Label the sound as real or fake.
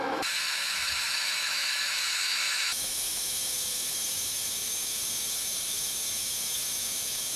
fake